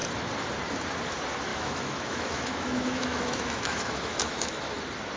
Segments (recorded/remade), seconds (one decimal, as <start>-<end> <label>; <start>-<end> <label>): 0.0-1.5 recorded; 1.5-4.6 remade; 4.6-5.2 recorded